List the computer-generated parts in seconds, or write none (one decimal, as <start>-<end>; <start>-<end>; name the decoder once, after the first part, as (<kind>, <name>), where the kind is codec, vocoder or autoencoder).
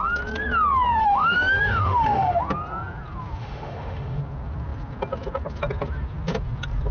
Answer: 1.0-2.4 (autoencoder, DAC-VAE); 3.4-4.2